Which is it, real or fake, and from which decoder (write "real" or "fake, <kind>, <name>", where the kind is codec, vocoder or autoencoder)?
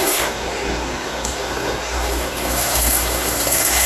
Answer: fake, codec, SNAC